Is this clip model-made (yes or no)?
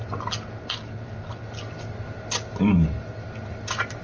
no